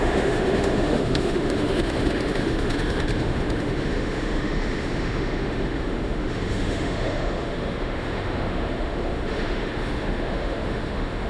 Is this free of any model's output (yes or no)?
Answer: no